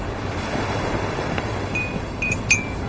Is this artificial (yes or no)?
no